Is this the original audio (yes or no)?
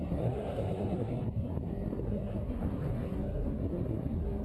no